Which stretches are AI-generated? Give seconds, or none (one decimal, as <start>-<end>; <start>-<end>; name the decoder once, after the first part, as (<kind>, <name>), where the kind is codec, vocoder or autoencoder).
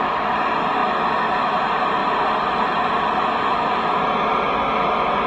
none